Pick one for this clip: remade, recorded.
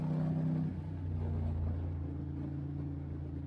recorded